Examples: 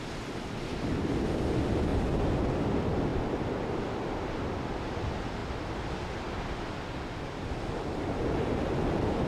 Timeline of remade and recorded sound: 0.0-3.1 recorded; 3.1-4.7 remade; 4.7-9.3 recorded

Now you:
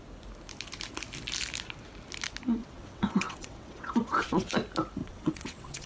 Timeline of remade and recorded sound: 0.0-2.6 recorded; 2.6-4.5 remade; 4.5-5.0 recorded; 5.0-5.9 remade

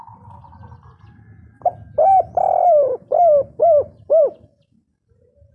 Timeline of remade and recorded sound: 0.0-5.5 recorded

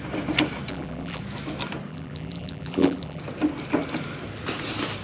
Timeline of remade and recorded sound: 0.0-0.7 recorded; 0.7-1.2 remade; 1.2-1.9 recorded; 1.9-3.2 remade; 3.2-5.0 recorded

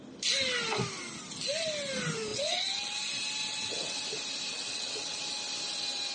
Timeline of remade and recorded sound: 0.0-2.3 recorded; 2.3-3.0 remade; 3.0-3.5 recorded; 3.5-4.0 remade; 4.0-4.5 recorded; 4.5-5.2 remade; 5.2-6.1 recorded